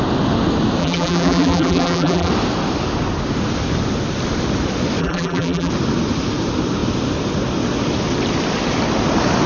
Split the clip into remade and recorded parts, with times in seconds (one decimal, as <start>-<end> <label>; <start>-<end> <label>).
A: 0.0-0.8 recorded; 0.8-2.3 remade; 2.3-5.0 recorded; 5.0-5.7 remade; 5.7-9.5 recorded